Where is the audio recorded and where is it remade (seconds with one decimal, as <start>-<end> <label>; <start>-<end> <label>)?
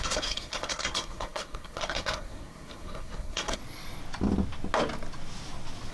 0.0-3.6 remade; 3.6-5.9 recorded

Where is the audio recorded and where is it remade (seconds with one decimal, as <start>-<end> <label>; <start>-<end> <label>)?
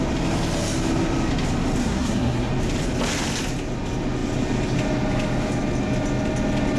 0.0-1.8 recorded; 1.8-2.5 remade; 2.5-6.8 recorded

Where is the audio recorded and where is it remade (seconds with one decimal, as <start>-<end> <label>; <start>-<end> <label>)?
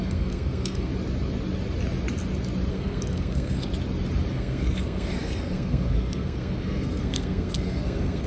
0.0-0.9 remade; 0.9-2.7 recorded; 2.7-3.7 remade; 3.7-4.3 recorded; 4.3-8.3 remade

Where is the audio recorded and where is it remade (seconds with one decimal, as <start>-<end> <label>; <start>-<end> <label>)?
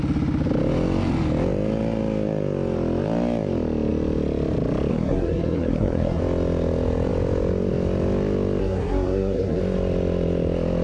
0.0-4.9 recorded; 4.9-6.2 remade; 6.2-8.6 recorded; 8.6-9.6 remade; 9.6-10.8 recorded